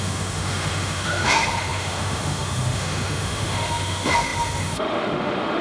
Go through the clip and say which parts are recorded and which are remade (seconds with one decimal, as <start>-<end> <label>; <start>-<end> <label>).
0.0-5.6 remade